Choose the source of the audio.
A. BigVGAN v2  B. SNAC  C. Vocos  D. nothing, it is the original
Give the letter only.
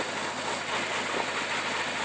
D